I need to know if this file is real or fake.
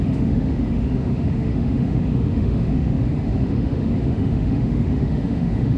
fake